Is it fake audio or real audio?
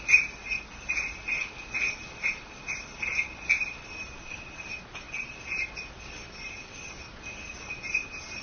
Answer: real